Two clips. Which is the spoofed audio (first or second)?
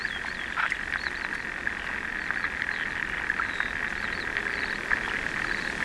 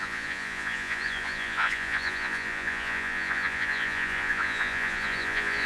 second